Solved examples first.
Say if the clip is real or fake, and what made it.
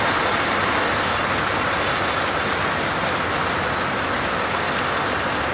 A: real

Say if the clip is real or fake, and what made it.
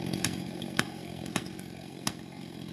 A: fake, codec, SNAC